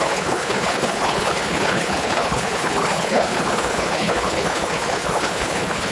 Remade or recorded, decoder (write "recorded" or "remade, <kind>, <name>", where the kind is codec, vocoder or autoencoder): remade, codec, HILCodec